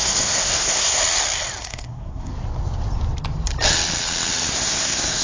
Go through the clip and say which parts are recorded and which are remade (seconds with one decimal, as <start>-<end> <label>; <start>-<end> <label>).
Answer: 0.0-1.0 remade; 1.0-1.6 recorded; 1.6-2.3 remade; 2.3-4.5 recorded; 4.5-5.2 remade